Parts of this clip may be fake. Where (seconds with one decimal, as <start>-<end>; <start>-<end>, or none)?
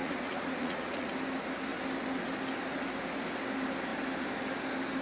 0.0-1.1